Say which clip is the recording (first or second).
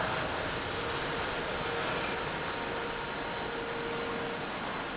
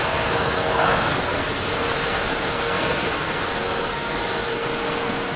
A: first